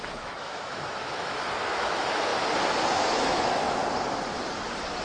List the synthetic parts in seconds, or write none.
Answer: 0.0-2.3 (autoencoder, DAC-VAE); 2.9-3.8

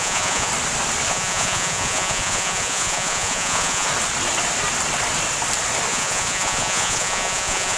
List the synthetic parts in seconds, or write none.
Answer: 0.0-0.5 (vocoder, Vocos); 1.1-3.9; 5.9-7.8

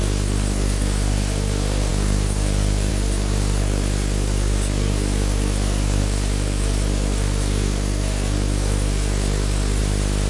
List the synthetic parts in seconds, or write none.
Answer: 0.0-9.8 (codec, SNAC)